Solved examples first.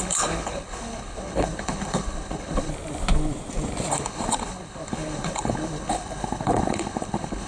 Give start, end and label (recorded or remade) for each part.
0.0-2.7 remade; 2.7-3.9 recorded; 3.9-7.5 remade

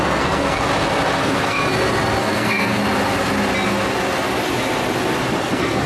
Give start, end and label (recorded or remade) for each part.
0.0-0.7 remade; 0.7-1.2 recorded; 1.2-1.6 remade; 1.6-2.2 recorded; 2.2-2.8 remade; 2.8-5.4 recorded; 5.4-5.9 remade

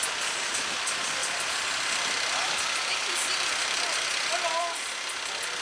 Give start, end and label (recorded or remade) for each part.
0.0-5.6 recorded

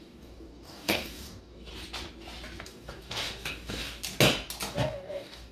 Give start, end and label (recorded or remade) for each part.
0.0-1.7 remade; 1.7-2.6 recorded; 2.6-4.0 remade; 4.0-4.7 recorded; 4.7-5.5 remade

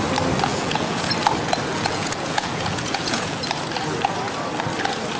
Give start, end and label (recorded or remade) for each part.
0.0-0.5 recorded; 0.5-1.1 remade; 1.1-1.7 recorded; 1.7-3.4 remade; 3.4-5.2 recorded